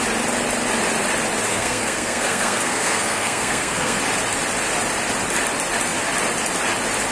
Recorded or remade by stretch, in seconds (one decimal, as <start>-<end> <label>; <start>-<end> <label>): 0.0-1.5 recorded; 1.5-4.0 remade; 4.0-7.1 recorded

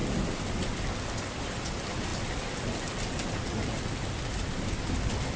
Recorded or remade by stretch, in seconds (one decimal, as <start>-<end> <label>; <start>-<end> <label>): 0.0-1.0 remade; 1.0-2.1 recorded; 2.1-5.4 remade

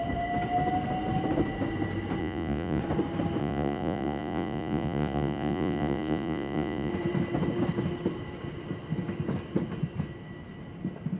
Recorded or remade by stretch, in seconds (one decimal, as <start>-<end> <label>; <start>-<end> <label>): 0.0-2.2 recorded; 2.2-2.8 remade; 2.8-3.4 recorded; 3.4-6.9 remade; 6.9-11.2 recorded

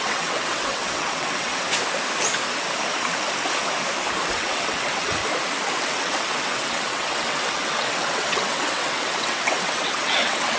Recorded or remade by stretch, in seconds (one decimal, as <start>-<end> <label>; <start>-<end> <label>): 0.0-1.5 remade; 1.5-4.3 recorded; 4.3-5.2 remade; 5.2-5.8 recorded; 5.8-10.6 remade

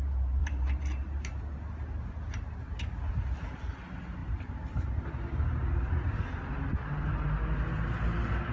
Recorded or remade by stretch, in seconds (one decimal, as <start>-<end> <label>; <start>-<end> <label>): 0.0-8.5 recorded

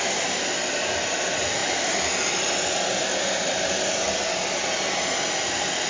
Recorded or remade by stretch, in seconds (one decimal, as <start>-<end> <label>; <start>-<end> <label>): 0.0-5.9 recorded

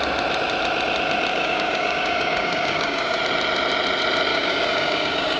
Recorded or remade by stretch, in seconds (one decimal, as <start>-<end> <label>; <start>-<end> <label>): 0.0-1.3 recorded; 1.3-3.2 remade; 3.2-4.3 recorded; 4.3-5.4 remade